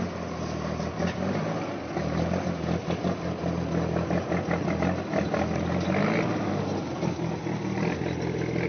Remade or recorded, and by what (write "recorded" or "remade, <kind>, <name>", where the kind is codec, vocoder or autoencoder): recorded